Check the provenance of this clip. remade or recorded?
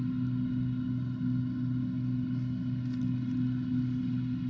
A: recorded